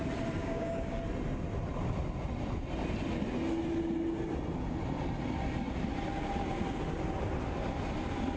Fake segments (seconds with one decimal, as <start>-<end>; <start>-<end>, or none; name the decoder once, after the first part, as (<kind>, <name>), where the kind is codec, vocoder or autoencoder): 0.4-1.0 (codec, DAC)